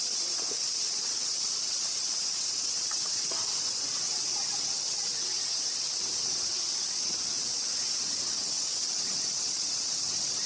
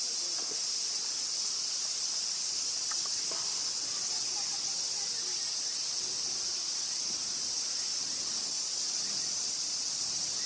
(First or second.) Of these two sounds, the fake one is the first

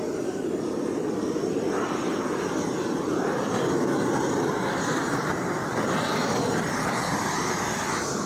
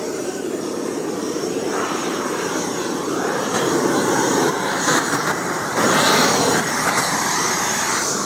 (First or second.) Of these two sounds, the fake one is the second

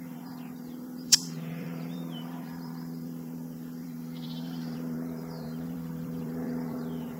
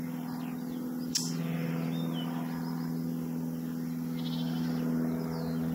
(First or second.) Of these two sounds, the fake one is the first